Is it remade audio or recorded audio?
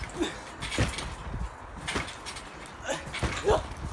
recorded